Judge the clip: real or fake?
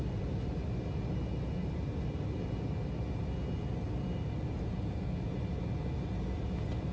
real